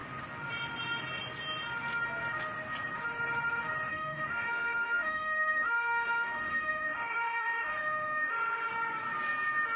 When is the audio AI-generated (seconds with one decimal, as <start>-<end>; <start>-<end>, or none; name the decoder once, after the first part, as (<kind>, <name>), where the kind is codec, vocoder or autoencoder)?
3.9-8.7 (autoencoder, DAC-VAE)